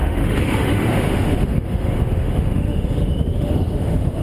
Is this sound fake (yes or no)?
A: yes